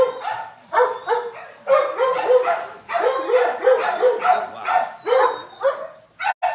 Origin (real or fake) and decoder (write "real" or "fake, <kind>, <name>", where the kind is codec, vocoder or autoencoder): real